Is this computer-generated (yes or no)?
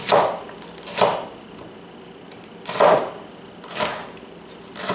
no